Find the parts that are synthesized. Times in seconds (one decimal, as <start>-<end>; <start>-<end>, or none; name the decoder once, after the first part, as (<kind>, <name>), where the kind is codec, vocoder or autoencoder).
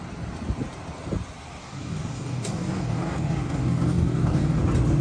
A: 1.6-4.6 (codec, DAC)